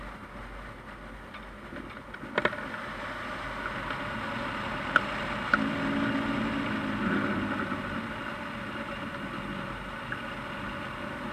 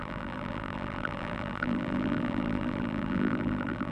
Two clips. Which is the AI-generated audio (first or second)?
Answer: second